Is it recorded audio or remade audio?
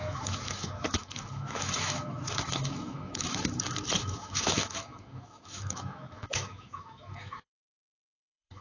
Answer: remade